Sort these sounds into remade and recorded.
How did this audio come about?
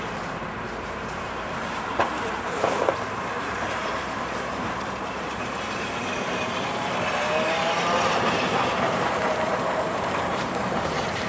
remade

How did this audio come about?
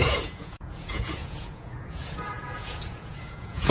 remade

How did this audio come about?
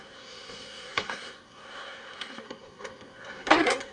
remade